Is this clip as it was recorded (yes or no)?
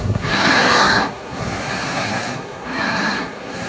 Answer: no